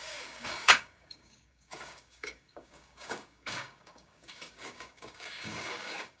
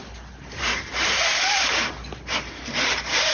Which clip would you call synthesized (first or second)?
first